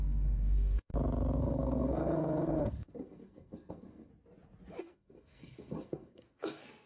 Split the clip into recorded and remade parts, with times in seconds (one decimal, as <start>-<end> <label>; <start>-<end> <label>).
0.0-0.9 remade; 0.9-1.4 recorded; 1.4-4.1 remade; 4.1-4.8 recorded; 4.8-6.9 remade